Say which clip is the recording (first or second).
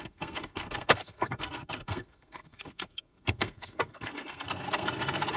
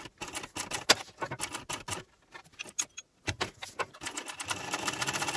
second